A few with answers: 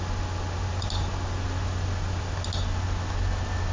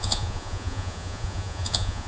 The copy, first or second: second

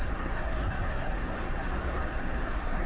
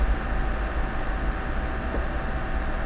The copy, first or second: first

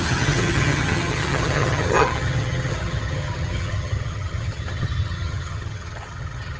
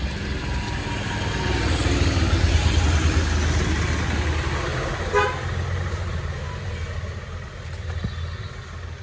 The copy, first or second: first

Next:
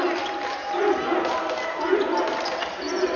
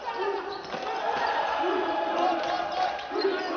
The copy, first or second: second